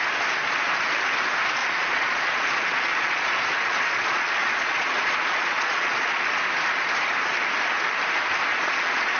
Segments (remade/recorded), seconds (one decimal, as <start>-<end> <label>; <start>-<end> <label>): 0.0-1.6 recorded; 1.6-6.2 remade; 6.2-8.5 recorded; 8.5-9.2 remade